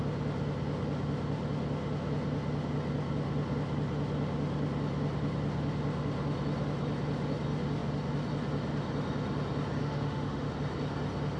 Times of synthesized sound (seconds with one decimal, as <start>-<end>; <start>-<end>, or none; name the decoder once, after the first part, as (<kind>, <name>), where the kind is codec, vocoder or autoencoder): 9.8-10.5 (autoencoder, DAC-VAE)